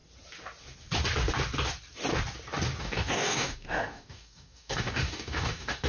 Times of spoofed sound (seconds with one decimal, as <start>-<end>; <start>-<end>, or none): 2.8-5.9